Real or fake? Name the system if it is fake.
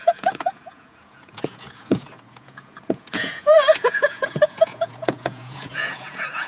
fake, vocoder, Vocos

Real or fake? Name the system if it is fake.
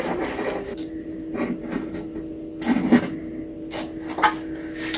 real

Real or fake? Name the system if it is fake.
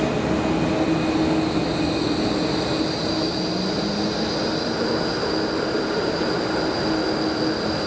real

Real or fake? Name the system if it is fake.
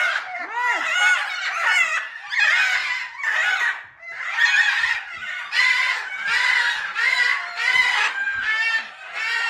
real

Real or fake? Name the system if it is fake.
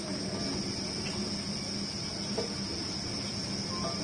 real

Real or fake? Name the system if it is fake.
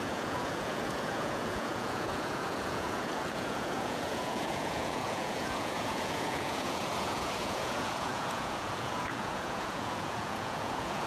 fake, vocoder, Vocos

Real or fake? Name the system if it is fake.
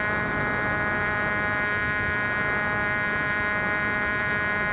real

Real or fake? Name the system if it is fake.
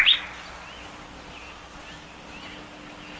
real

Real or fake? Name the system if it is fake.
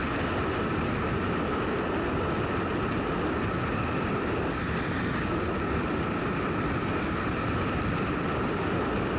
real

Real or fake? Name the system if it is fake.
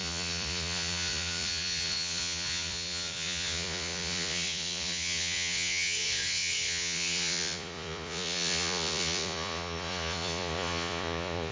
fake, vocoder, Vocos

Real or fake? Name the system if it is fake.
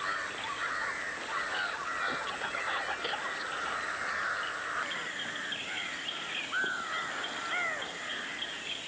real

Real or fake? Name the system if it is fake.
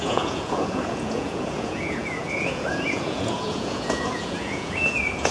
fake, vocoder, Vocos